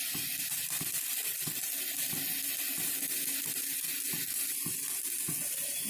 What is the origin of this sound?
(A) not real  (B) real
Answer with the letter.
B